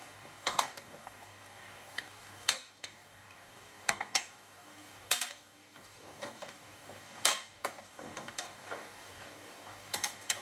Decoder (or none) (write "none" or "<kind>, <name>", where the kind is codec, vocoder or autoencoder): codec, DAC